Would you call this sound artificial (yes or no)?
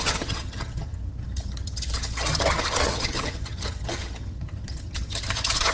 yes